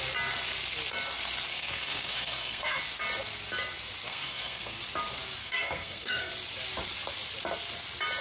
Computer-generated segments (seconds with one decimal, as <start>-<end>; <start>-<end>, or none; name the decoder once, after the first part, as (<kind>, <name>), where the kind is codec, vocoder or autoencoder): 1.5-2.8 (codec, SNAC); 4.1-4.8; 5.4-6.3